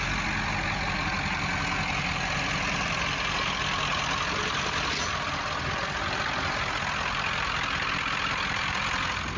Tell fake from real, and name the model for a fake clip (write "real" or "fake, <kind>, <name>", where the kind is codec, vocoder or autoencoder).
real